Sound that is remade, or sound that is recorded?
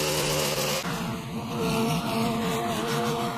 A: recorded